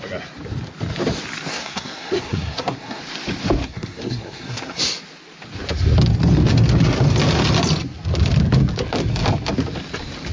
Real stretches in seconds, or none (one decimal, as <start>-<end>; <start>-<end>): 0.0-1.5; 3.0-3.6; 4.8-10.3